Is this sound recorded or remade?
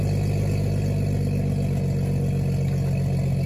recorded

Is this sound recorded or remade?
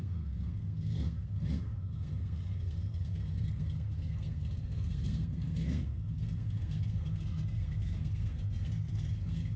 remade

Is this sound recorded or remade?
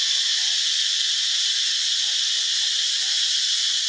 recorded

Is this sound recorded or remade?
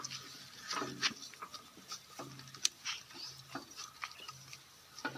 recorded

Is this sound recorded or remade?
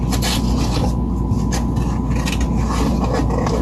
recorded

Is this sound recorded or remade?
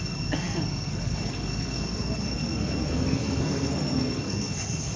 remade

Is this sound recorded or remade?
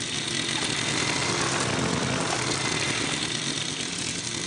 recorded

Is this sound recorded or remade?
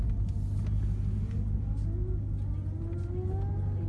recorded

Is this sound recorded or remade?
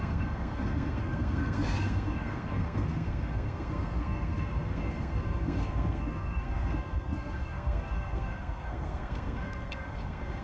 remade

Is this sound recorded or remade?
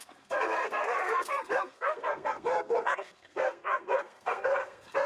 remade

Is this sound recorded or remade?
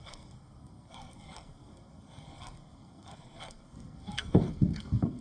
remade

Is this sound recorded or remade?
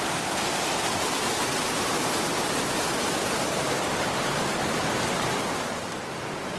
recorded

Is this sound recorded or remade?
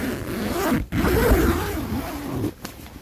recorded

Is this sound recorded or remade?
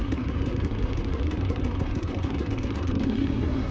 remade